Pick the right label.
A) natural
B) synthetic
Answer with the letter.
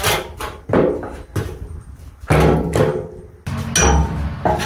A